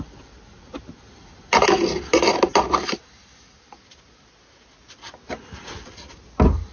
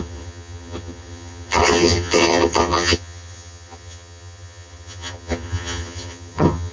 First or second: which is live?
first